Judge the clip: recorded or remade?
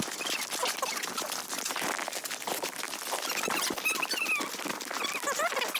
recorded